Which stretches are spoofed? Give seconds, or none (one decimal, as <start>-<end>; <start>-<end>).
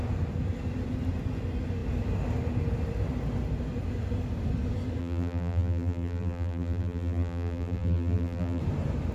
5.0-8.6